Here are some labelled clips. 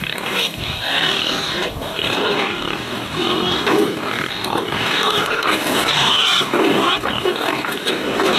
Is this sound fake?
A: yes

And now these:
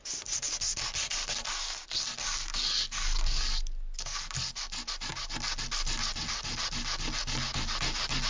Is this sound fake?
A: no